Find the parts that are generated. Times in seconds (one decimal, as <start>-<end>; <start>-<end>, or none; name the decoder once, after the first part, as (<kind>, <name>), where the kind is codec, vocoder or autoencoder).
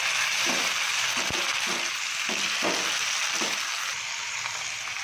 none